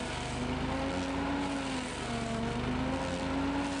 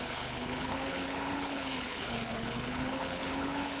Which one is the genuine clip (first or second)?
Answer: first